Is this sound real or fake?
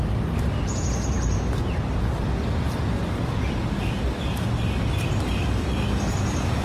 real